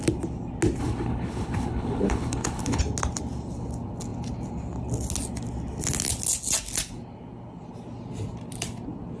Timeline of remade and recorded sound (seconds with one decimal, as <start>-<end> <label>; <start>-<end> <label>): 0.0-0.8 recorded; 0.8-2.8 remade; 2.8-9.2 recorded